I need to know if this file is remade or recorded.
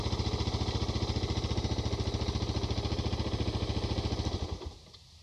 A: recorded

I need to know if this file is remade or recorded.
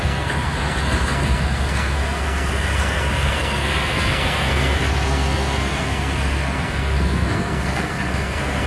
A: remade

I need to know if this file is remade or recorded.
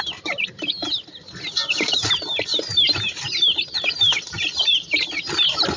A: recorded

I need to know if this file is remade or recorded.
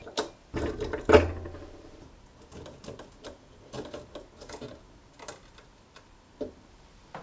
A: recorded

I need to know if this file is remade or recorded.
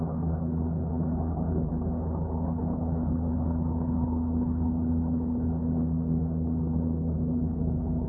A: remade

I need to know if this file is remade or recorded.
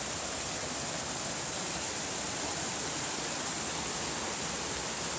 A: recorded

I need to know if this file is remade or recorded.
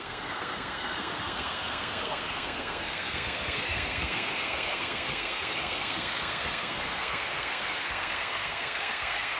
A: remade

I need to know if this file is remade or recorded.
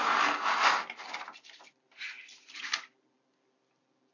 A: recorded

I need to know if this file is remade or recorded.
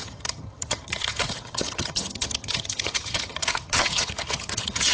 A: remade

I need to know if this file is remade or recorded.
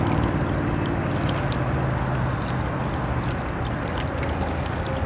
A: recorded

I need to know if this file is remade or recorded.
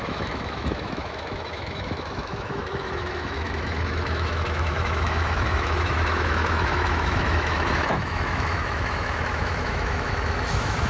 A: remade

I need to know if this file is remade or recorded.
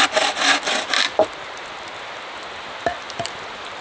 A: recorded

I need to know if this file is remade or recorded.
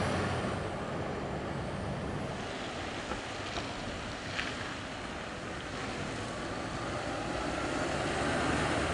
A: recorded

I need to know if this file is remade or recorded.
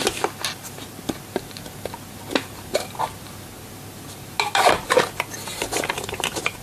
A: recorded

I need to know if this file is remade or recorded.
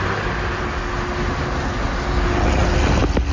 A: recorded